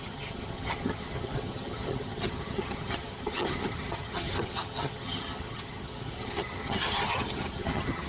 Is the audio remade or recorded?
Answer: remade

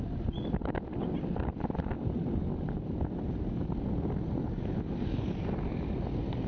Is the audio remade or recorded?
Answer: recorded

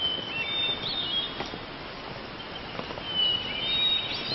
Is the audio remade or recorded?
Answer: recorded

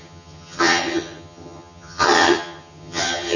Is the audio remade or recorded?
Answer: remade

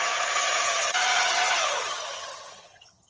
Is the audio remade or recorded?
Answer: remade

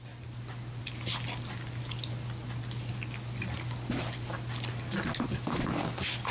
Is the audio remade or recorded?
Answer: recorded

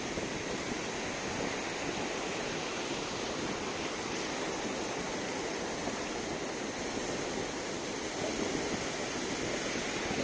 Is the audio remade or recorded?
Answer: recorded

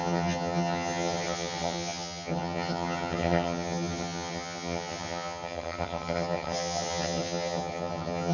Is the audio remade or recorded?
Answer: remade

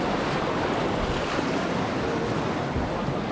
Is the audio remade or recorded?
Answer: recorded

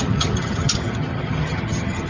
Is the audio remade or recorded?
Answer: remade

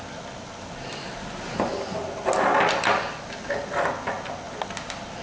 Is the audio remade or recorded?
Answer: recorded